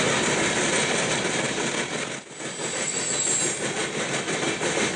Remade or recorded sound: recorded